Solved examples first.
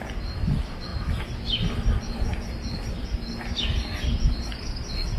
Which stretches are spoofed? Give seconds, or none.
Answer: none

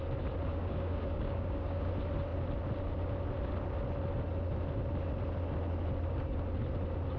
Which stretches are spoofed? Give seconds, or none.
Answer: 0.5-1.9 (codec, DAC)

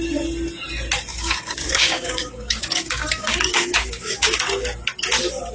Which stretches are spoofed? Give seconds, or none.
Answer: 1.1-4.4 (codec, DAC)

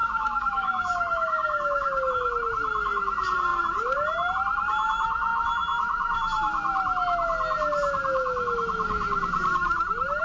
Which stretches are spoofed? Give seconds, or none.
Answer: 0.0-2.1 (codec, DAC)

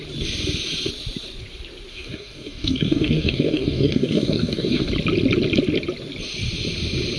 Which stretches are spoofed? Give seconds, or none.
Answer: 1.9-4.9 (codec, DAC)

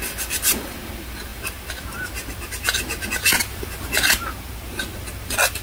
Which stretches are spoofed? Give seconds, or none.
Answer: none

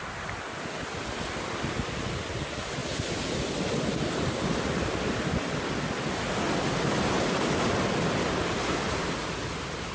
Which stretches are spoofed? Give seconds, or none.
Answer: none